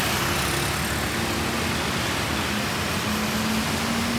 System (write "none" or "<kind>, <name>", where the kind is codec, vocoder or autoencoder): none